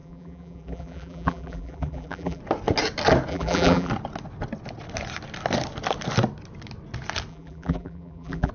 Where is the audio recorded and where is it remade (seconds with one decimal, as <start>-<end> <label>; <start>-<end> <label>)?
0.0-2.4 remade; 2.4-3.3 recorded; 3.3-3.9 remade; 3.9-7.3 recorded; 7.3-8.5 remade